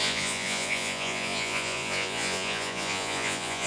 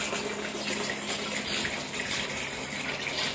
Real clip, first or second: second